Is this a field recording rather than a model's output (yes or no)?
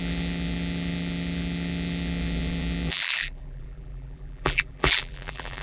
no